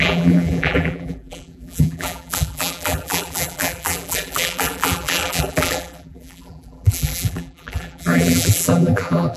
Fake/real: fake